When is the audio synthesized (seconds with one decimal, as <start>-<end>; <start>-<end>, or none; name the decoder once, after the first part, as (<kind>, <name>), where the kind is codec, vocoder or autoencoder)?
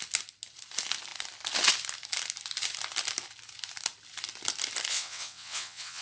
4.9-6.0 (vocoder, WaveNeXt)